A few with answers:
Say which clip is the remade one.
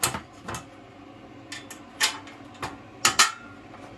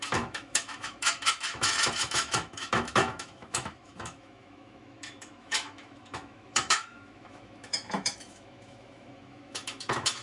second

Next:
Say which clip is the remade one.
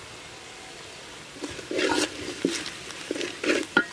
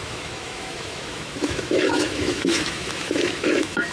second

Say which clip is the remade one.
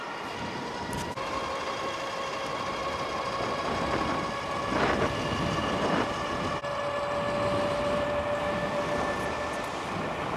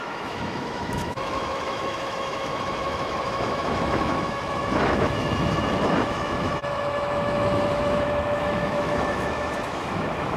second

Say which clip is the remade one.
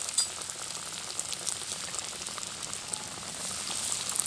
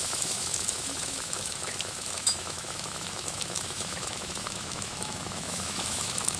second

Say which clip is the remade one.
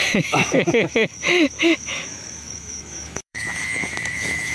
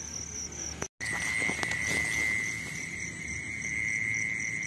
first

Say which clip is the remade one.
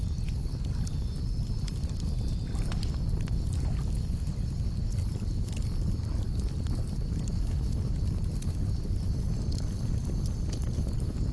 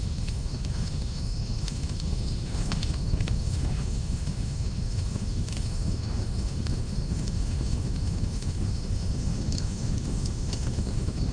second